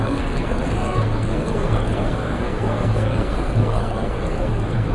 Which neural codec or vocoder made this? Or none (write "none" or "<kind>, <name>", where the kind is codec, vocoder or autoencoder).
codec, SNAC